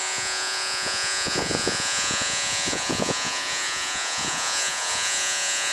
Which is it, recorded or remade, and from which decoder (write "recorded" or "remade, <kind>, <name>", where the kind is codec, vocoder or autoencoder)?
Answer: remade, vocoder, Vocos